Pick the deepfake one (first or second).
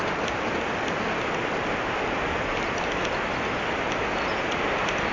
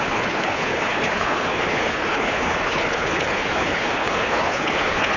second